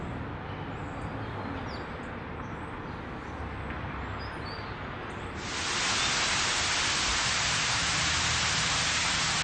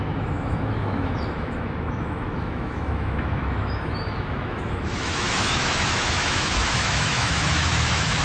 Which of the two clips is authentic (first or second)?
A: first